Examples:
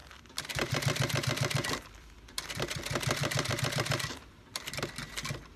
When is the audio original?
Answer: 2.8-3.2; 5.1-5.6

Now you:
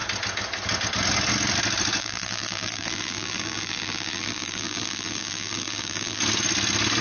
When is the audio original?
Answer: 0.0-2.0; 6.2-7.0

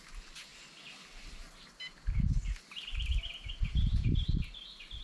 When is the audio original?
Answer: 0.0-5.0